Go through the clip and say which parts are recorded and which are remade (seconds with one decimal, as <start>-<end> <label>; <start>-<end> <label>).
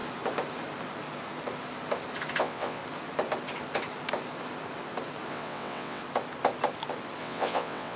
0.0-2.4 recorded; 2.4-2.8 remade; 2.8-5.3 recorded; 5.3-6.0 remade; 6.0-7.2 recorded; 7.2-8.0 remade